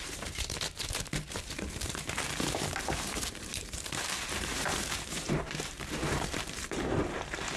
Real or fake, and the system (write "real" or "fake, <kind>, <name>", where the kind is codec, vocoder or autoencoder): fake, vocoder, BigVGAN v2